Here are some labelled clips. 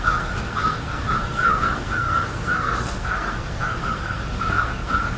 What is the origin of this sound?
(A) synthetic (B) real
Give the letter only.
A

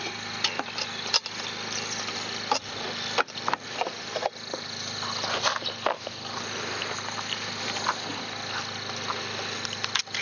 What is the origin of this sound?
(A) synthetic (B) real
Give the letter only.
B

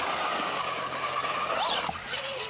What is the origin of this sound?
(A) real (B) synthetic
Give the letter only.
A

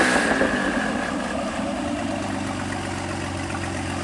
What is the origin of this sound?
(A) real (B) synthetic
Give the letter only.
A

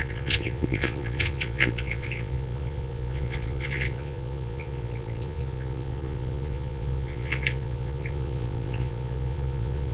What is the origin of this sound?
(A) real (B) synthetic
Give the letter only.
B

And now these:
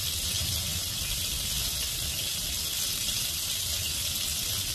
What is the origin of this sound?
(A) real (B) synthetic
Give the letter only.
A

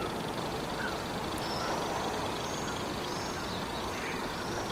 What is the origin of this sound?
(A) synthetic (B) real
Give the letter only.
B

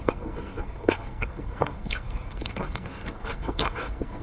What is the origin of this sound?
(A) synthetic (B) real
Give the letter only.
A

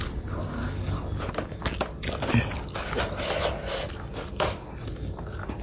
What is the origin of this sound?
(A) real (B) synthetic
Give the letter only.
A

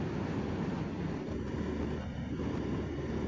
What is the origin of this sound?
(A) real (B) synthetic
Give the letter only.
A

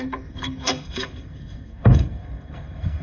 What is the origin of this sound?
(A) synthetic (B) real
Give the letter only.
A